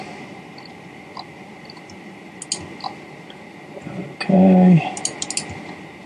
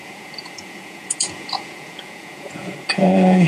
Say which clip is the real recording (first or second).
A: first